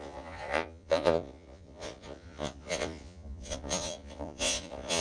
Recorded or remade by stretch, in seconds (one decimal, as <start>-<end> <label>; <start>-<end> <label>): 0.0-5.0 remade